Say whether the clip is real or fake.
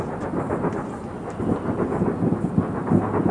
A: real